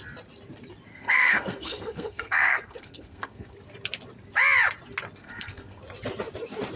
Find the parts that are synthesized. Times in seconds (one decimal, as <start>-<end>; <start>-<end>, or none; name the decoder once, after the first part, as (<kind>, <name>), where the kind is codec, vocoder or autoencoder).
0.9-3.5 (codec, SNAC); 5.2-5.8